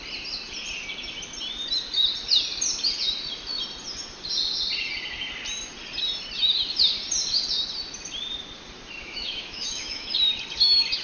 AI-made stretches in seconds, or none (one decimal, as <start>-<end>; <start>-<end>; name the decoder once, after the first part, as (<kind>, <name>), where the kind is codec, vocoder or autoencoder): 9.0-10.1 (autoencoder, DAC-VAE)